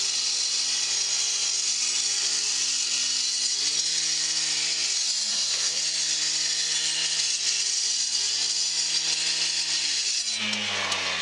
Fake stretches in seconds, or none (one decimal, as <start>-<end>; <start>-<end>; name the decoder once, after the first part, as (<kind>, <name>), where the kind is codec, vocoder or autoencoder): 5.3-5.8 (codec, SNAC)